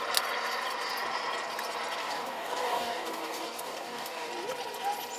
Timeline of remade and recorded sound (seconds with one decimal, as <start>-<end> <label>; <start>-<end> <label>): 0.0-2.0 recorded; 2.0-4.3 remade; 4.3-5.2 recorded